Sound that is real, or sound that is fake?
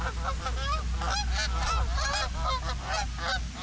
real